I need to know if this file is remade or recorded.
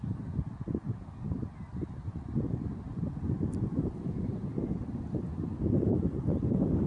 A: recorded